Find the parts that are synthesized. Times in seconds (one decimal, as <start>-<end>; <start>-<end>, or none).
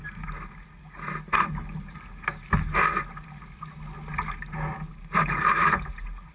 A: none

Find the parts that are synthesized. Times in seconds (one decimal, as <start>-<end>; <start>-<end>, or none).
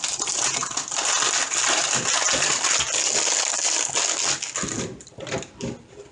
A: none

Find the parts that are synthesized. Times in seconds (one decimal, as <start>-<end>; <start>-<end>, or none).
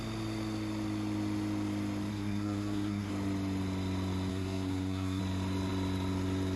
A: 2.1-3.1; 4.3-5.2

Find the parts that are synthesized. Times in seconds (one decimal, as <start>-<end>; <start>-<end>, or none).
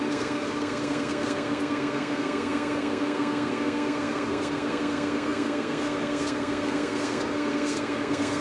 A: 0.0-8.4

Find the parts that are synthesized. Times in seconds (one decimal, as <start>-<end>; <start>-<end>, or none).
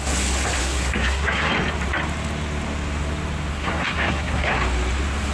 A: 0.6-1.5; 3.5-4.6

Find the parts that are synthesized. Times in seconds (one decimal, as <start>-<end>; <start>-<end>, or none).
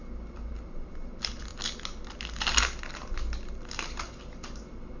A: none